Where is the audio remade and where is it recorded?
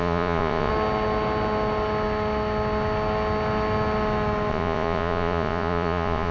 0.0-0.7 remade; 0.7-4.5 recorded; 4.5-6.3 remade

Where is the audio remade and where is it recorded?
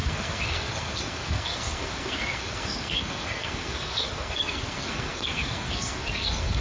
0.0-6.6 remade